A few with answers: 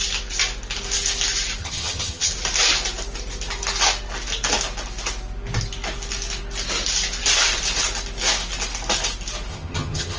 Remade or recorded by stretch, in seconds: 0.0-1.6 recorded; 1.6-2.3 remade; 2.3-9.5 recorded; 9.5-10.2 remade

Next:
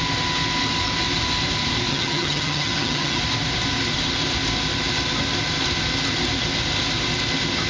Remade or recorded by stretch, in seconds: 0.0-1.9 recorded; 1.9-3.2 remade; 3.2-7.7 recorded